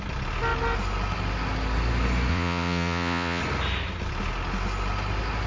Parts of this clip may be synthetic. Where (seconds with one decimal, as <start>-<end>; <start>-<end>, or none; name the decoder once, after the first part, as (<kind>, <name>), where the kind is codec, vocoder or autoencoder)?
2.3-3.4 (vocoder, Vocos)